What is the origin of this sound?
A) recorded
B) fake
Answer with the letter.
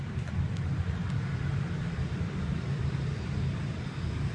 B